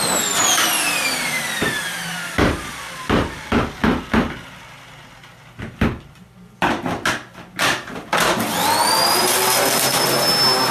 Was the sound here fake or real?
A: real